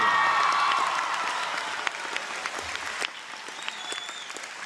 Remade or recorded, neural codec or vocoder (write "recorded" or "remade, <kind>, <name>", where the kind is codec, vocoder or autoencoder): recorded